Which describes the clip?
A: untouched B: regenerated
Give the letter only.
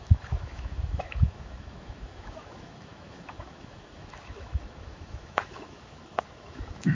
B